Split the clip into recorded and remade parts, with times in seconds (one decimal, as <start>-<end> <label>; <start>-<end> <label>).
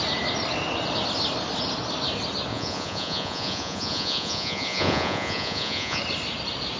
0.0-2.5 recorded; 2.5-6.0 remade; 6.0-6.8 recorded